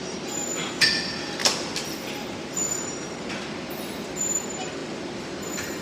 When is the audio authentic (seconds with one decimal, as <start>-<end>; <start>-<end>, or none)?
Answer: 1.4-3.4